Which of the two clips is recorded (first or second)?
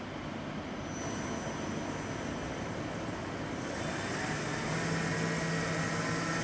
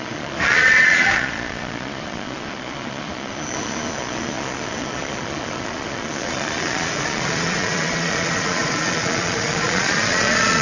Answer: first